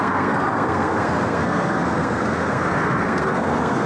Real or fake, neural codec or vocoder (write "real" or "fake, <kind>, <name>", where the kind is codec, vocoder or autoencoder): fake, codec, SNAC